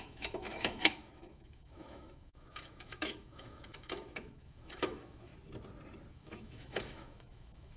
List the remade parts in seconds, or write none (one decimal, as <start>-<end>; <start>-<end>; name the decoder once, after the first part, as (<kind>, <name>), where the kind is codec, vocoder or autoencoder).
0.0-5.3 (autoencoder, DAC-VAE); 6.1-7.8

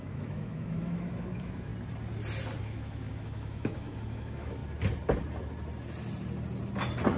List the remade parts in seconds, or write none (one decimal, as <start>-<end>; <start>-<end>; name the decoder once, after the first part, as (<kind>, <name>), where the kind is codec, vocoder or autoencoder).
0.0-1.7 (autoencoder, DAC-VAE); 2.6-4.6

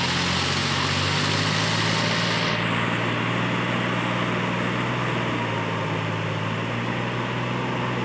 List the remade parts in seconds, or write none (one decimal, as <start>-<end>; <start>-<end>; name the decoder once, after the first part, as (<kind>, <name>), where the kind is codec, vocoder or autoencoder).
none

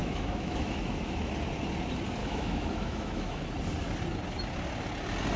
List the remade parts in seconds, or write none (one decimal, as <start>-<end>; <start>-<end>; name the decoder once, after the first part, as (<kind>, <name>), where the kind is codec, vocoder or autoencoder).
0.0-1.3 (autoencoder, DAC-VAE); 2.2-3.4

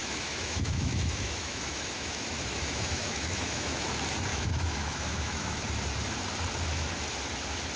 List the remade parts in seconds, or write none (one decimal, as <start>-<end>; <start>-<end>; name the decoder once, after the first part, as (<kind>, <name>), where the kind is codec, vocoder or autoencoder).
0.0-3.9 (autoencoder, DAC-VAE); 4.3-5.6

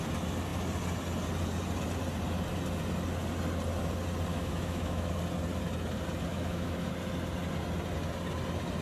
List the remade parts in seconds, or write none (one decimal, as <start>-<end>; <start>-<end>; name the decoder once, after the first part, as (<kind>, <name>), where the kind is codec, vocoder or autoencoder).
4.3-5.1 (autoencoder, DAC-VAE); 6.3-6.9